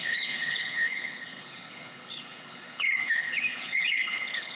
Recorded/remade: remade